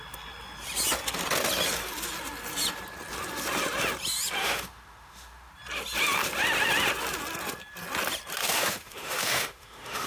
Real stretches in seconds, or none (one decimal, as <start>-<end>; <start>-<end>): 0.0-4.4; 5.5-8.4